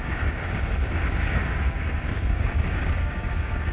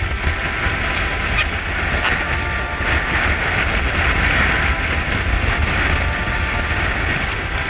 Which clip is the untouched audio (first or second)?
second